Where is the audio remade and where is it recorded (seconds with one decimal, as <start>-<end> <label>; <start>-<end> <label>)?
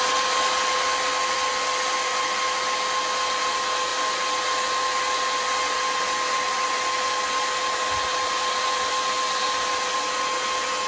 0.0-10.9 recorded